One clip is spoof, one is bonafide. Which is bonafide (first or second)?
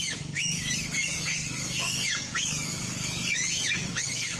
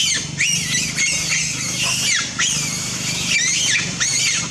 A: second